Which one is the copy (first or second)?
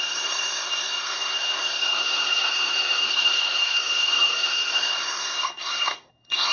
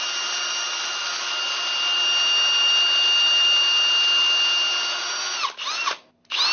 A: first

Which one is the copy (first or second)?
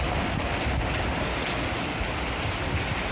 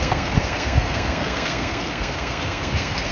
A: second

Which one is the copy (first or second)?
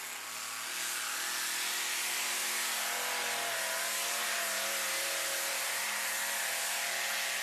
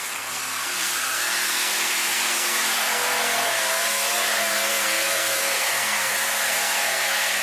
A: second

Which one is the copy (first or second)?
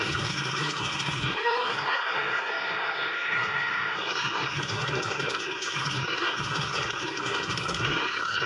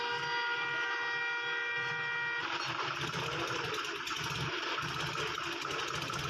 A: first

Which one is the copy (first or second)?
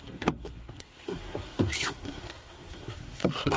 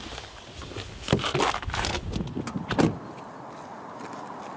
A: first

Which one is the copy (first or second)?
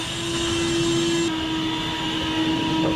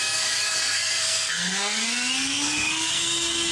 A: second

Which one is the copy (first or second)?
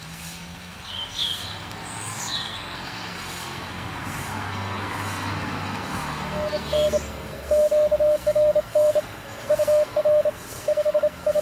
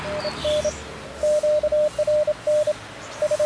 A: first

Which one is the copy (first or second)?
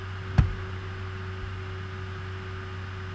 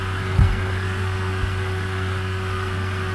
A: second